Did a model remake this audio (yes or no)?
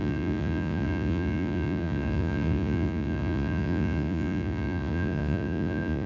yes